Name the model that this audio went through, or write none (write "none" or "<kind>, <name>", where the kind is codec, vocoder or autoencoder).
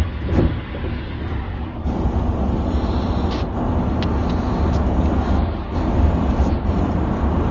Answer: none